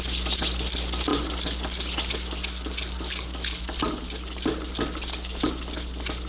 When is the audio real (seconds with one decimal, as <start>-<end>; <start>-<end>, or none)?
0.0-6.3